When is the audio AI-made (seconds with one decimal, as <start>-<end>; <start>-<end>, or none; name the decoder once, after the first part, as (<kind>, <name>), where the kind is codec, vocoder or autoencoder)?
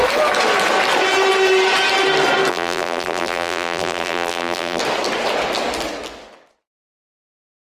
2.5-4.8 (vocoder, BigVGAN v2)